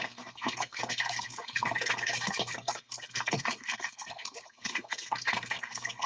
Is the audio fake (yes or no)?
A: yes